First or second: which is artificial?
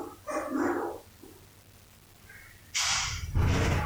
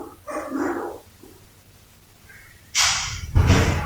second